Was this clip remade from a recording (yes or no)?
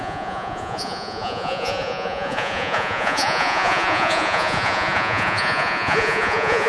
yes